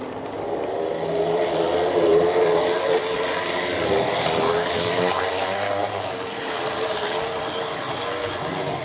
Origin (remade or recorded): recorded